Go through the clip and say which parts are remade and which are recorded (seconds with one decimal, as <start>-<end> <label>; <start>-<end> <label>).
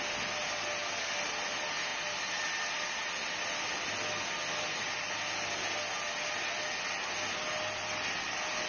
0.0-8.7 recorded